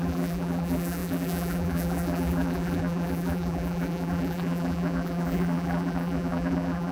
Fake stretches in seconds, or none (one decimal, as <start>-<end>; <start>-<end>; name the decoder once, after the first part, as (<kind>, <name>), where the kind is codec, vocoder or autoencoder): 0.0-6.9 (vocoder, BigVGAN v2)